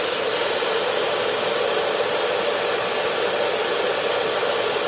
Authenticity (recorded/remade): recorded